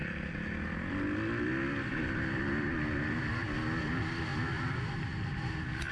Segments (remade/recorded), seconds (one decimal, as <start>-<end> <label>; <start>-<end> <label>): 0.0-5.9 recorded